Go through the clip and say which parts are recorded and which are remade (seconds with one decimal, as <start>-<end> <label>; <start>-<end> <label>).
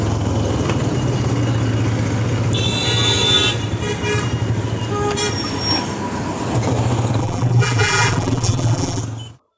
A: 0.0-7.2 recorded; 7.2-9.0 remade; 9.0-9.6 recorded